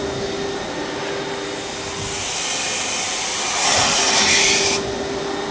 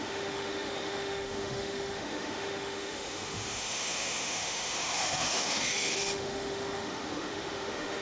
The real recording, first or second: first